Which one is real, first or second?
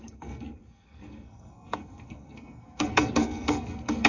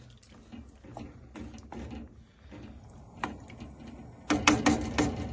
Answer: second